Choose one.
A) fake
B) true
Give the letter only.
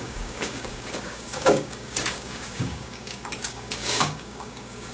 A